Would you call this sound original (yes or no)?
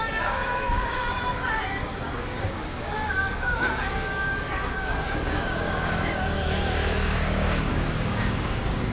no